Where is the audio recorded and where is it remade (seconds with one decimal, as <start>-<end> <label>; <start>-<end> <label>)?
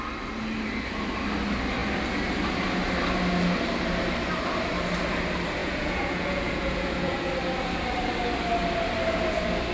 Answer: 0.0-5.6 recorded; 5.6-7.3 remade; 7.3-9.7 recorded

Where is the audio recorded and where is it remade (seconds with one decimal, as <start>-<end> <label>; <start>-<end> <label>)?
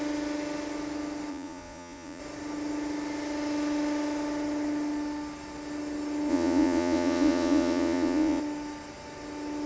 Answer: 0.0-1.3 recorded; 1.3-2.2 remade; 2.2-6.3 recorded; 6.3-8.4 remade; 8.4-9.7 recorded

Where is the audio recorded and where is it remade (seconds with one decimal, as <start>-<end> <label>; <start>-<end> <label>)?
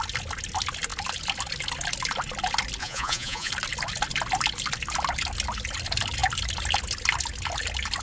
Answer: 0.0-2.8 recorded; 2.8-3.5 remade; 3.5-8.0 recorded